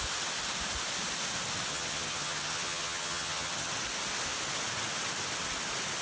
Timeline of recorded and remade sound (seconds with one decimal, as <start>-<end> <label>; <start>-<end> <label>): 0.0-1.7 recorded; 1.7-3.7 remade; 3.7-6.0 recorded